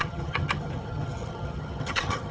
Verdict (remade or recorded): remade